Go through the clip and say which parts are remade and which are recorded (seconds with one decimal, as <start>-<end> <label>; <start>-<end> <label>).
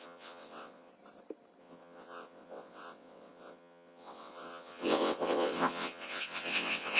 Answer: 0.0-0.9 remade; 0.9-1.6 recorded; 1.6-7.0 remade